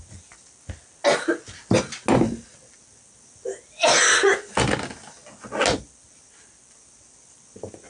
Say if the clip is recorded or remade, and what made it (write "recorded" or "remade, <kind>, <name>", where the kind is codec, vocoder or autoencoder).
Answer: recorded